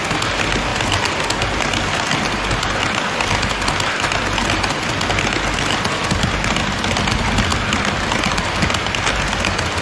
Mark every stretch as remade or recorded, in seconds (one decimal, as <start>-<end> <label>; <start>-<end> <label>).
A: 0.0-9.8 recorded